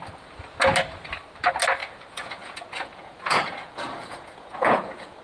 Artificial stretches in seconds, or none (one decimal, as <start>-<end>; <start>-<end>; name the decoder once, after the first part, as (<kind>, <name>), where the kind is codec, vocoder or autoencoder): 1.8-5.2 (vocoder, Vocos)

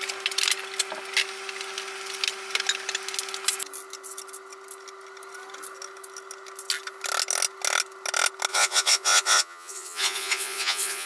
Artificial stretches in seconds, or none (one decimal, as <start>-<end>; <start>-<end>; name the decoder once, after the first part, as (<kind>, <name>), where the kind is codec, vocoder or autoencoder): 8.5-11.1 (vocoder, Vocos)

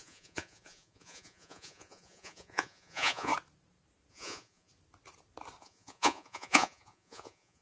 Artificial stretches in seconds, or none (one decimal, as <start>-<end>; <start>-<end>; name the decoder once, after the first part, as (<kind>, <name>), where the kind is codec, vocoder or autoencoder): 0.0-3.3 (vocoder, Vocos); 4.1-4.7; 5.6-7.6

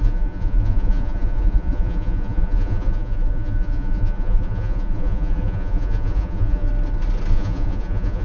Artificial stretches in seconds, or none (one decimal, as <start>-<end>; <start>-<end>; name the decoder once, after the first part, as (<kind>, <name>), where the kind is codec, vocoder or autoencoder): 0.0-6.7 (vocoder, Vocos); 7.3-8.2

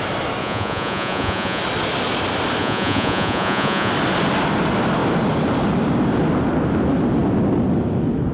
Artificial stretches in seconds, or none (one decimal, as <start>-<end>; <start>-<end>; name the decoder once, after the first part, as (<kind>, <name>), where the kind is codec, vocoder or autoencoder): 0.4-1.6 (vocoder, Vocos); 2.6-3.9

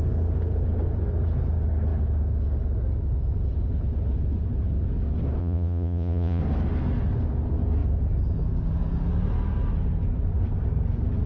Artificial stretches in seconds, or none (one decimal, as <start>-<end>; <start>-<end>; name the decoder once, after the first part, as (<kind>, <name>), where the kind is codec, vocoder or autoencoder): 5.4-6.4 (vocoder, Vocos)

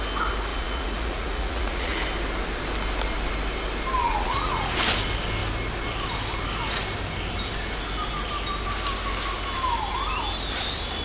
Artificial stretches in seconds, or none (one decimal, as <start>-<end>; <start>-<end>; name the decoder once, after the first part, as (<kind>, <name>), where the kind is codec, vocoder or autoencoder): 0.5-2.0 (vocoder, Vocos); 4.0-4.7

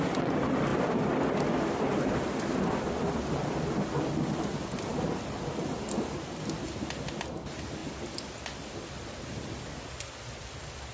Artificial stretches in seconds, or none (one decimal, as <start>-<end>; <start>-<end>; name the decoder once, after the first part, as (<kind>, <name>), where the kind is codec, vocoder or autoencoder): none